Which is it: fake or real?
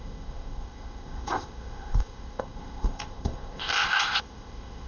fake